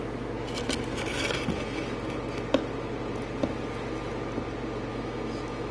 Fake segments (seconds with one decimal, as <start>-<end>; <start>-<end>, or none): 4.9-5.7